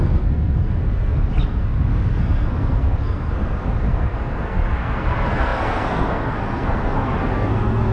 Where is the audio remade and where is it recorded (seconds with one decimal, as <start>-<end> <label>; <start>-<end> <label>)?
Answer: 0.0-7.9 remade